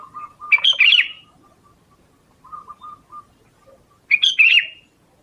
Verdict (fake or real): real